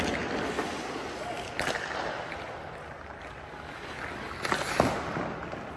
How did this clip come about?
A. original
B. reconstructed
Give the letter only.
A